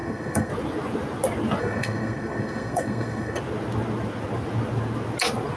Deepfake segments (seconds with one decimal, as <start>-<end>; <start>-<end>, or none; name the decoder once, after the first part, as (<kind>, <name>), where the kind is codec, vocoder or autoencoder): 0.0-0.5 (codec, SNAC); 1.6-3.4